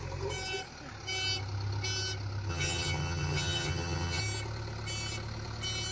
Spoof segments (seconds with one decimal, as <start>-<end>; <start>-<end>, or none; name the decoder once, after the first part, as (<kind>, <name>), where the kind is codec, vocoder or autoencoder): 2.5-4.2 (vocoder, HiFi-GAN)

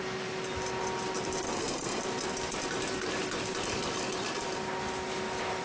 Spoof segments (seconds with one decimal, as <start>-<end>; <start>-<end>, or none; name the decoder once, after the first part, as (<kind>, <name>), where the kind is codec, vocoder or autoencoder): 1.5-2.0 (codec, SNAC)

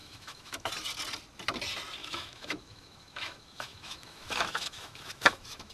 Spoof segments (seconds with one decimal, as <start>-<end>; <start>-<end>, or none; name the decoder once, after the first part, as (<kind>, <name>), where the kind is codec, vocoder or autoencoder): 0.0-0.7 (autoencoder, DAC-VAE); 2.0-5.7

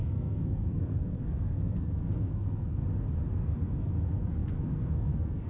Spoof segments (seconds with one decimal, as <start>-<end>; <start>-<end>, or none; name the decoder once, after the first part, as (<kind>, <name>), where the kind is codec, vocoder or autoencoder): 0.0-2.8 (codec, SNAC); 3.3-5.5

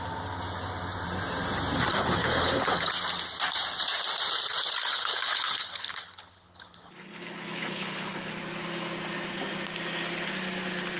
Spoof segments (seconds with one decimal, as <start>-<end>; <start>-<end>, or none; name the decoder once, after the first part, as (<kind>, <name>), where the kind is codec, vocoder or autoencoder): 1.9-2.9 (codec, HILCodec); 4.8-8.3